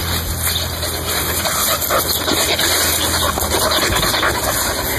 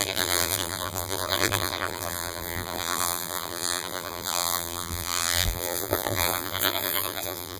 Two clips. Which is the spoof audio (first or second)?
second